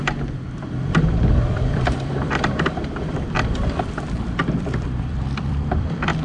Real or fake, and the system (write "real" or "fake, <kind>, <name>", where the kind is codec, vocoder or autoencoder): fake, vocoder, BigVGAN v2